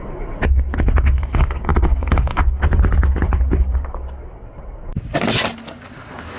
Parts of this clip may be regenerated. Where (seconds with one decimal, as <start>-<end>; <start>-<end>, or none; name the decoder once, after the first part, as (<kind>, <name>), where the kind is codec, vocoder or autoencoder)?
none